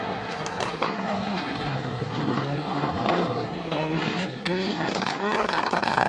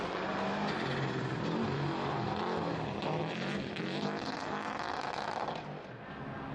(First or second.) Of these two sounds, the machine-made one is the first